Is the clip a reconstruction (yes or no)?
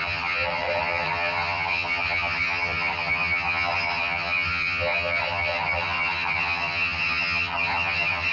yes